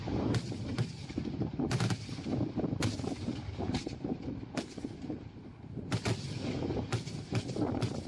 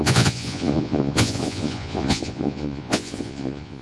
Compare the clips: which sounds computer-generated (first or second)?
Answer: second